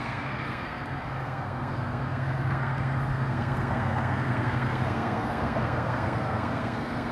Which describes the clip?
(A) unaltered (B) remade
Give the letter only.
B